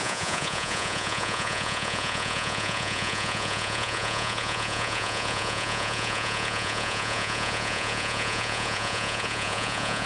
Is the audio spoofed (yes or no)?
yes